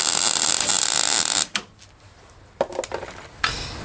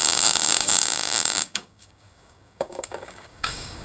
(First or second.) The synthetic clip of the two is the second